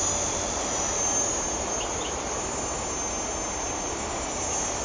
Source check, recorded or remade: recorded